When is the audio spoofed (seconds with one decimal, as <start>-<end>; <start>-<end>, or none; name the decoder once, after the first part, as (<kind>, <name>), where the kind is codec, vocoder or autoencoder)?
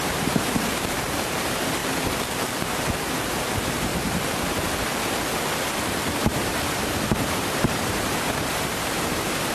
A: 0.0-1.8 (vocoder, BigVGAN v2); 3.4-3.9; 5.8-9.5